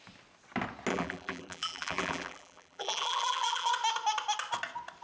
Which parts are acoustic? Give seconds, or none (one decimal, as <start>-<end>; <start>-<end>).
0.0-0.9; 3.7-5.0